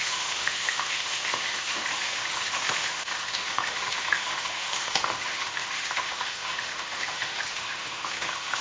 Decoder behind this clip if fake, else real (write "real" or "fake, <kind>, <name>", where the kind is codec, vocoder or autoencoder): fake, autoencoder, DAC-VAE